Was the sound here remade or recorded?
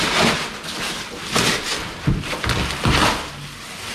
recorded